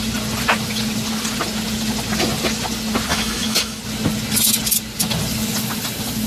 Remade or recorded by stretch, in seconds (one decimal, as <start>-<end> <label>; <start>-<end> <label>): 0.0-3.1 recorded; 3.1-3.8 remade; 3.8-6.3 recorded